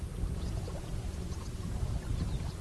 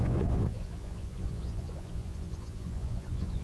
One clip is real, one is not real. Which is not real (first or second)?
second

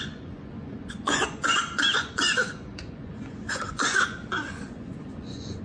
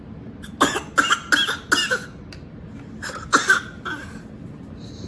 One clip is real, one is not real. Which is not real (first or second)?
first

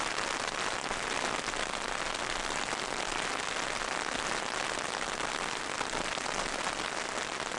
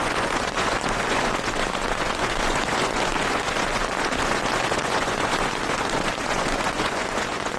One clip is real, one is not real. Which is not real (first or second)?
second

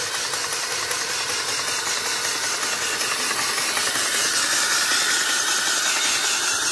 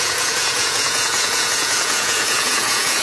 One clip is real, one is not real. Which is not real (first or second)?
second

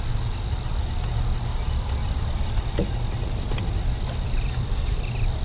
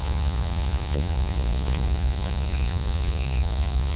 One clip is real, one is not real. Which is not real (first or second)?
second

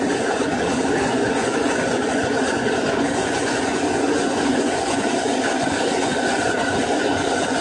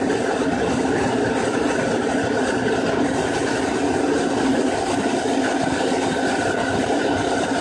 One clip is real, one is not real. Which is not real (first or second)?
first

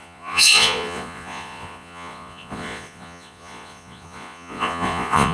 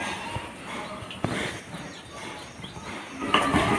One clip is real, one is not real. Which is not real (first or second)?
first